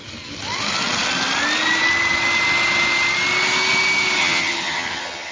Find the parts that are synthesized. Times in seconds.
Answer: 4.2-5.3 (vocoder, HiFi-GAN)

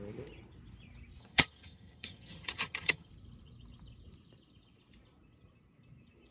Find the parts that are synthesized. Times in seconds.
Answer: 1.2-3.1 (vocoder, HiFi-GAN)

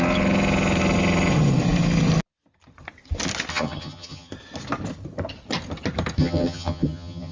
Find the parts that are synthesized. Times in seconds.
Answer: 3.5-4.3 (vocoder, HiFi-GAN); 6.2-7.3

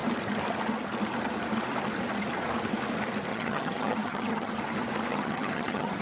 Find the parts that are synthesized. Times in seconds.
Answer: 3.3-4.5 (vocoder, HiFi-GAN); 5.1-6.0

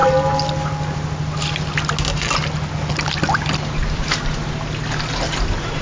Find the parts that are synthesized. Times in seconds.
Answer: none

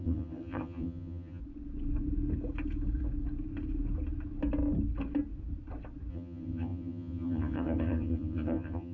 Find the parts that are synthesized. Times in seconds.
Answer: 0.0-1.4 (vocoder, HiFi-GAN); 6.1-8.9

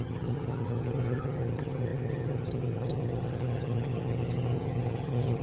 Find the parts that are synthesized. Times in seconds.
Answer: 0.0-5.4 (vocoder, HiFi-GAN)